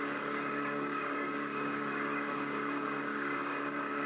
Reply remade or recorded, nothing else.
remade